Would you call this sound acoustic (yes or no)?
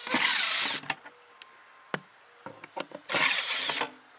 yes